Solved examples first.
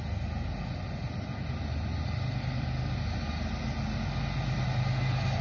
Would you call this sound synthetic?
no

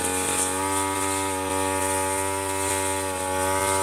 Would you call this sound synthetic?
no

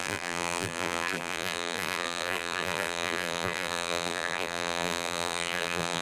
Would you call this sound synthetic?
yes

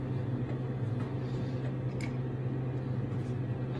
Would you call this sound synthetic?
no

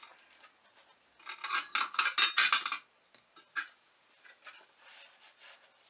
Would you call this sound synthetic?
no